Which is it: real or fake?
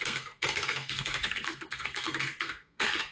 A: fake